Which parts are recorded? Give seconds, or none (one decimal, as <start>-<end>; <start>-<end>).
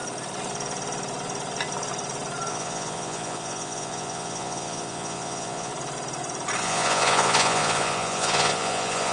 0.0-2.5; 5.7-6.6